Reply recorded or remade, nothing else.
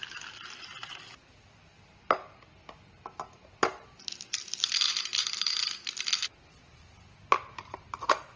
recorded